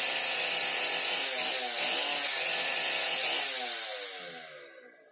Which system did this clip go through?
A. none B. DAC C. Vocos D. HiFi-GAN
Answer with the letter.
A